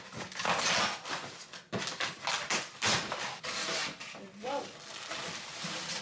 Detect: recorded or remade recorded